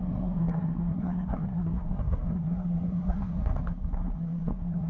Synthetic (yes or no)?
yes